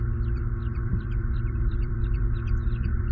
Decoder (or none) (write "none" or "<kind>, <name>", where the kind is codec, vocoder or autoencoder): vocoder, BigVGAN v2